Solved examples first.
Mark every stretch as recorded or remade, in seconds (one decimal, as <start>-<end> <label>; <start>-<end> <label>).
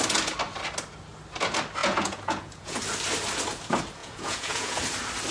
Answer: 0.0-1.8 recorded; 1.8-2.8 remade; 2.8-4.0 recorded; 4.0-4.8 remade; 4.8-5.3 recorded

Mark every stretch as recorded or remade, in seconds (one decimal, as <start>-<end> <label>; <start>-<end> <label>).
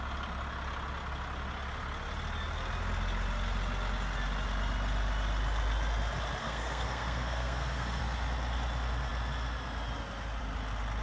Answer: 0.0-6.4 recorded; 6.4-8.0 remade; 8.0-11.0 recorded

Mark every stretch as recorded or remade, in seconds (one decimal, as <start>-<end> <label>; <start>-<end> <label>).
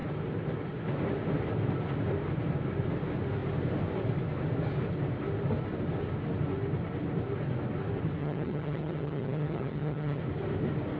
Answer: 0.0-8.2 recorded; 8.2-10.2 remade; 10.2-11.0 recorded